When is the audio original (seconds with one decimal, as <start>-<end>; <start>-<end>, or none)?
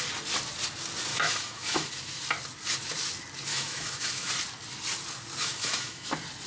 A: 0.0-1.1; 1.9-3.5; 4.3-5.4; 6.1-6.5